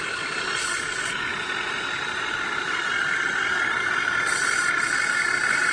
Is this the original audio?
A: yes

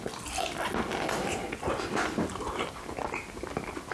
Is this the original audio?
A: yes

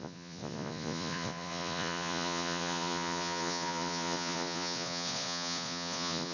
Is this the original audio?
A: no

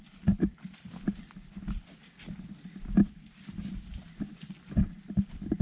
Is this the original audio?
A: yes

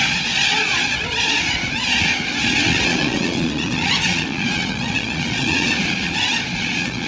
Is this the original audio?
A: no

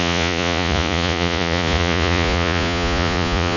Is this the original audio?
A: no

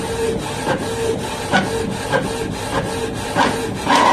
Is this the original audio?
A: yes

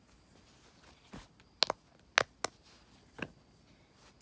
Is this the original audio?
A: yes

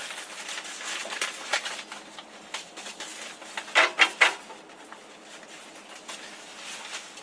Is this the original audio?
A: yes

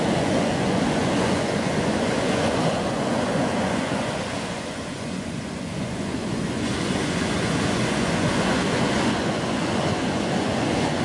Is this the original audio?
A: no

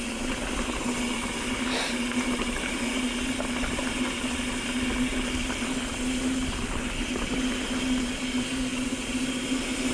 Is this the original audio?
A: yes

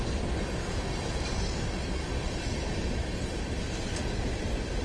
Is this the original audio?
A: yes